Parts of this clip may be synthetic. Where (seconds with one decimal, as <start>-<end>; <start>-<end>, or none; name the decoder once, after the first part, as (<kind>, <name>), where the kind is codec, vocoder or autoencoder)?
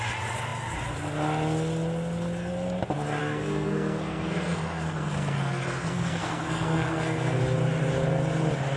3.2-7.4 (codec, SNAC)